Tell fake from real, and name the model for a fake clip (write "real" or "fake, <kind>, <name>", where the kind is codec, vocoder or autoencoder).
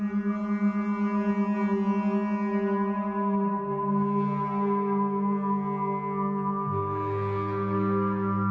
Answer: real